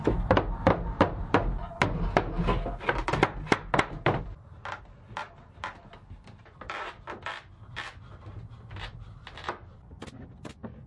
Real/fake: real